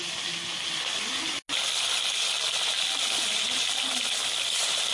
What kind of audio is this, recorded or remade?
recorded